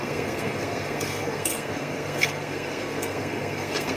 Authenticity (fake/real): fake